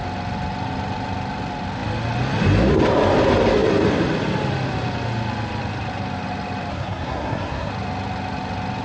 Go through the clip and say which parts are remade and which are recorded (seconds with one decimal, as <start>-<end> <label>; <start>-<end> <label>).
0.0-6.7 recorded; 6.7-7.7 remade; 7.7-8.8 recorded